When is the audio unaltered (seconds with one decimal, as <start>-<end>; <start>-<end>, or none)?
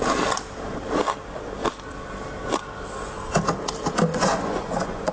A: 0.0-4.1